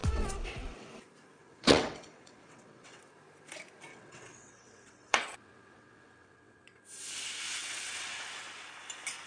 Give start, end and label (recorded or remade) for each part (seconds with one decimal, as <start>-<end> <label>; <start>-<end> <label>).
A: 0.0-0.9 remade; 0.9-1.4 recorded; 1.4-3.0 remade; 3.0-3.9 recorded; 3.9-6.8 remade; 6.8-7.6 recorded; 7.6-8.2 remade; 8.2-9.3 recorded